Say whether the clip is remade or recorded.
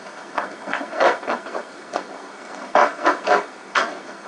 remade